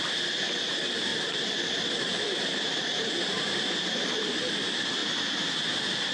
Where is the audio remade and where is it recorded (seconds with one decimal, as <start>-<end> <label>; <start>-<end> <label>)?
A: 0.0-6.1 recorded